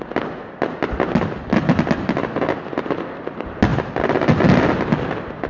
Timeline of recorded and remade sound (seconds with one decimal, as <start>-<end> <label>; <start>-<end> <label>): 0.0-5.5 recorded